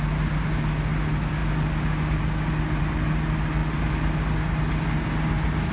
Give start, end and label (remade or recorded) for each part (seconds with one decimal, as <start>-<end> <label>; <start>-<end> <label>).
0.0-5.7 recorded